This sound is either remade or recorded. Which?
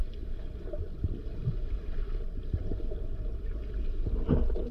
recorded